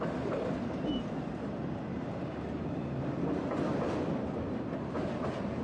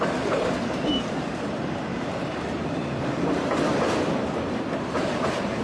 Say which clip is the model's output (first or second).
second